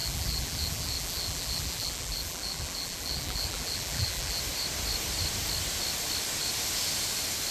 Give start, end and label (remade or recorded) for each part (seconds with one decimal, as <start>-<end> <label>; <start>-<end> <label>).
0.0-4.4 remade; 4.4-7.5 recorded